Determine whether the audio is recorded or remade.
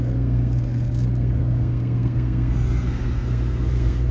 remade